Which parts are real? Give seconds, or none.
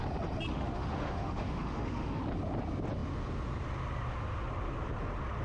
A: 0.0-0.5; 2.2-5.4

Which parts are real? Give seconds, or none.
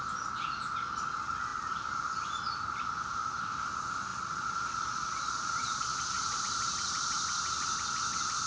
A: 0.0-4.1; 6.4-8.5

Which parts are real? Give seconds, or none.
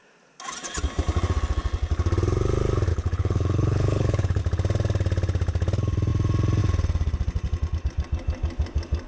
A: 0.0-2.9; 4.4-9.1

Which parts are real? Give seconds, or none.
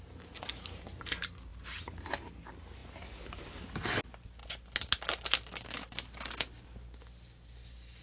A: 0.0-8.0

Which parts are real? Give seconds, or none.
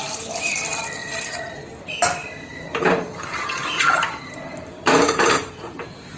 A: 0.0-1.0; 1.6-2.2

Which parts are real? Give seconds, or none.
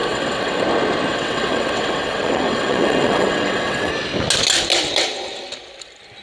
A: 0.6-1.1; 3.9-6.2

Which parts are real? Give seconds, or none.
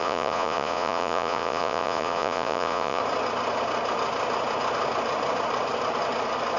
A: 3.0-6.6